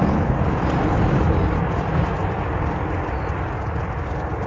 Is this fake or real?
real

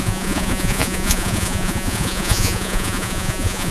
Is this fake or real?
fake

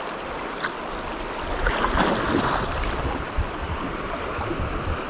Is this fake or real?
real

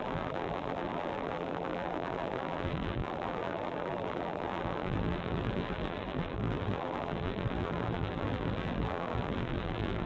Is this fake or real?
fake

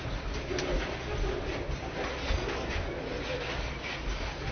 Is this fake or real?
real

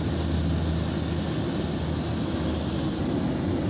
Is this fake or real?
real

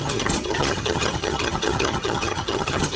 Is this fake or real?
fake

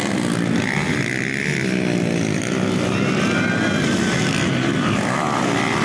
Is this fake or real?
real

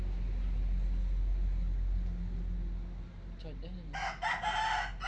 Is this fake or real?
real